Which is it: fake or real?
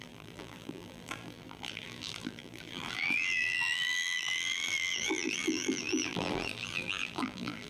fake